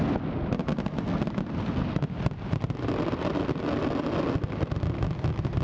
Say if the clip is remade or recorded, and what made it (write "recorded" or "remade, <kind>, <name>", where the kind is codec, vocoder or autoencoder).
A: recorded